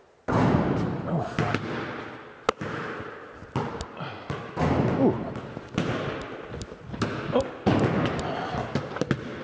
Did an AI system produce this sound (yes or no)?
no